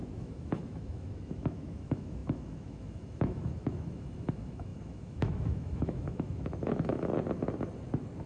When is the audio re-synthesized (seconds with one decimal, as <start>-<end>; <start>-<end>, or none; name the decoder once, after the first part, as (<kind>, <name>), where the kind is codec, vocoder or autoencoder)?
0.0-7.1 (autoencoder, DAC-VAE)